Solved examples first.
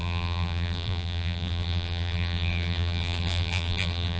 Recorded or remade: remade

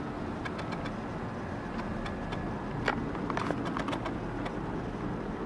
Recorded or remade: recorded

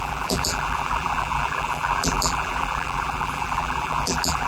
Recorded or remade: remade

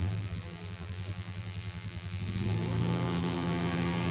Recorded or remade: remade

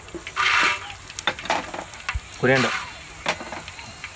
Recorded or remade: recorded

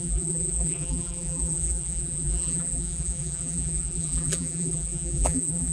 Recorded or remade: remade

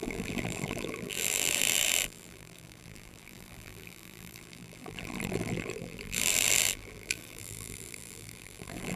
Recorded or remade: remade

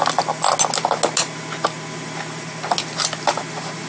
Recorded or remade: recorded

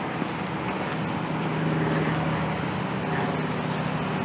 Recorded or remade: recorded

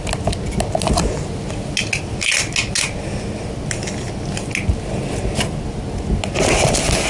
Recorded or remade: recorded